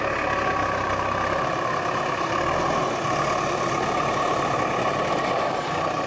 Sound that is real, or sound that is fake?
real